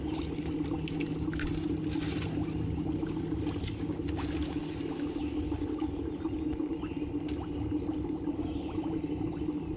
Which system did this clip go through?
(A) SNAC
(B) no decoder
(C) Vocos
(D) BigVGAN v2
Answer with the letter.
B